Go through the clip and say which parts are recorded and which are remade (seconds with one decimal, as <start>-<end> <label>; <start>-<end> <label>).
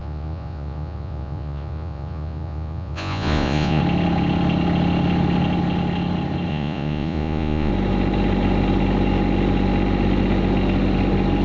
0.0-3.8 remade; 3.8-6.5 recorded; 6.5-7.7 remade; 7.7-11.4 recorded